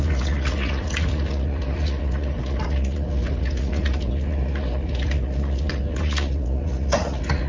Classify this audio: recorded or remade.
remade